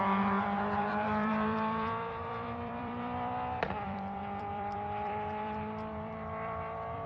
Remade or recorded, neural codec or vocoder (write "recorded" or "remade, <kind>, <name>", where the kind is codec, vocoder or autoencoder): remade, vocoder, BigVGAN v2